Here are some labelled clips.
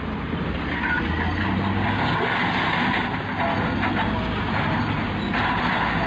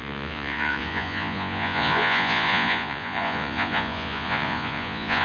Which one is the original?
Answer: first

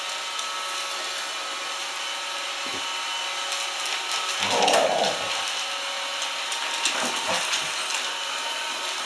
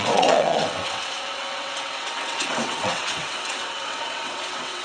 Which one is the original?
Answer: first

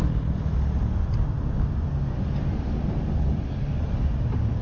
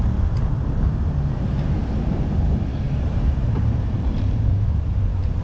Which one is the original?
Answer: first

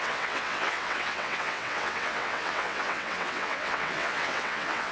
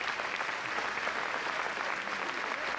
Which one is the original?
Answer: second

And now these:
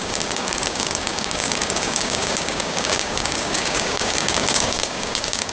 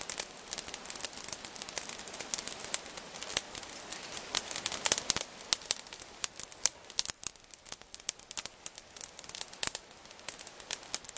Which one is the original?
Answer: second